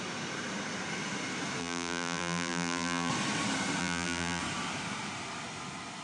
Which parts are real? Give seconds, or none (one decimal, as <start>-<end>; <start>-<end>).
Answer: 0.0-1.6; 3.1-3.8; 4.4-6.0